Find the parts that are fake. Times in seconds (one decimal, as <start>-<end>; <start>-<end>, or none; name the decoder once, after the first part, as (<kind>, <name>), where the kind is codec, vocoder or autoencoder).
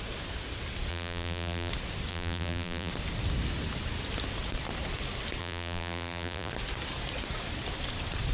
0.9-1.7 (vocoder, BigVGAN v2); 2.1-2.9; 5.4-6.5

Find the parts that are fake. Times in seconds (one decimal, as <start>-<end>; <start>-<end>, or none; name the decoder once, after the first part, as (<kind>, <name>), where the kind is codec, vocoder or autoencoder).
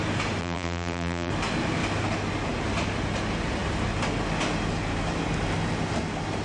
0.4-1.3 (vocoder, BigVGAN v2)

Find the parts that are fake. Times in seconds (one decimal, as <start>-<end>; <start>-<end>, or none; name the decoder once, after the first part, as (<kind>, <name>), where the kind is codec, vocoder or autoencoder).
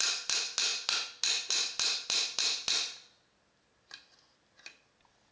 none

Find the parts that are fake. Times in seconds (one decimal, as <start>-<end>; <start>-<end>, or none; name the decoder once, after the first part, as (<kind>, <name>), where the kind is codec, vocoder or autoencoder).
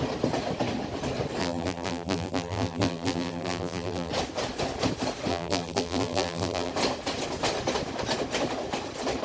1.4-4.1 (vocoder, BigVGAN v2); 5.3-6.7